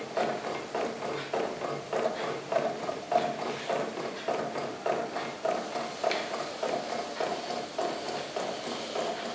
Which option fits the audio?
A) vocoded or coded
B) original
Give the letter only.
B